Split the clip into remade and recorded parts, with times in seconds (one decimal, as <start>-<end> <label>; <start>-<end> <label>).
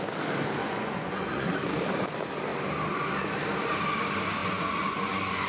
0.0-0.6 recorded; 0.6-1.5 remade; 1.5-4.4 recorded; 4.4-5.5 remade